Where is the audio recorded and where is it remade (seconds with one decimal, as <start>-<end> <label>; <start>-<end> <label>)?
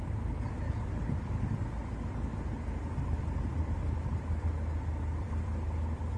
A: 0.0-1.8 remade; 1.8-3.5 recorded; 3.5-4.5 remade; 4.5-5.2 recorded; 5.2-6.2 remade